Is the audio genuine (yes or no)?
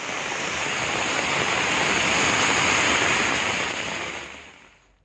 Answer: yes